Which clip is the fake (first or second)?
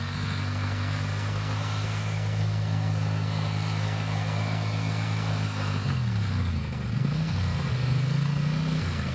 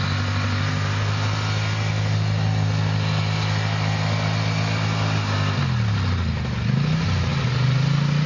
first